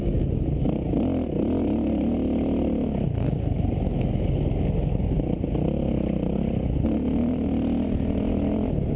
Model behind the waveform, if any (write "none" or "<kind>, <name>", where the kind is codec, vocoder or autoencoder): none